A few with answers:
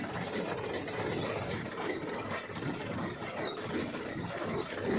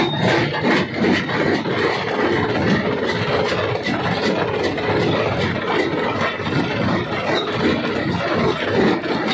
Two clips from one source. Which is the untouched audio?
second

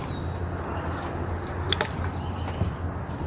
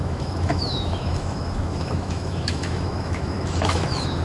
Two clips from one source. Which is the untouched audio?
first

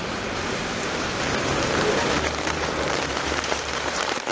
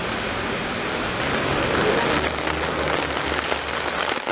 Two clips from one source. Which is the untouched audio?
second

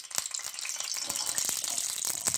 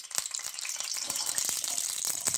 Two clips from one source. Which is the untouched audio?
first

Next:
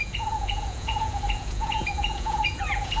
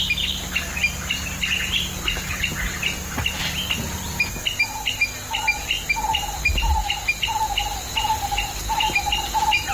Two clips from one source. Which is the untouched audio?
second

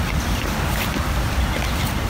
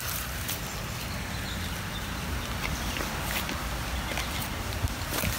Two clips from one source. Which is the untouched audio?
second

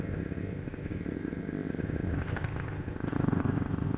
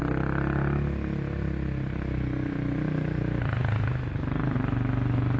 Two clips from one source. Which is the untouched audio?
second